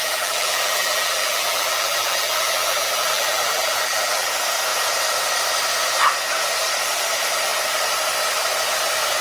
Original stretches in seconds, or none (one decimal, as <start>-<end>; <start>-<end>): 4.3-9.2